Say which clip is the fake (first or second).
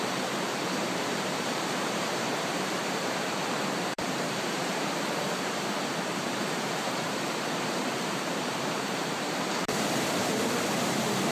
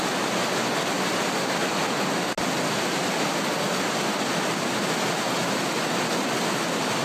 first